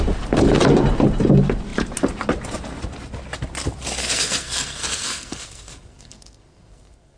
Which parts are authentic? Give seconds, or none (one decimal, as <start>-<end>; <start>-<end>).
0.0-4.0